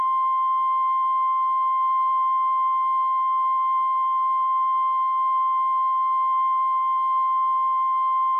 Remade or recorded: remade